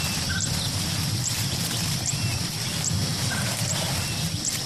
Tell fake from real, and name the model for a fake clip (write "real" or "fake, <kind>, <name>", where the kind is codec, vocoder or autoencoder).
real